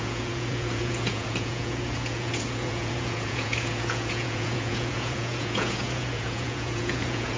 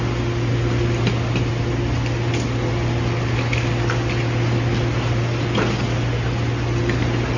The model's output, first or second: first